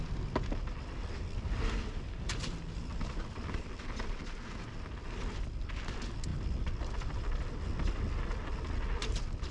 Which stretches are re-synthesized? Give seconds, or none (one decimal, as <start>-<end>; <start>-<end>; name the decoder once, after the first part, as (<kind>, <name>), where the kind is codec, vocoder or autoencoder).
none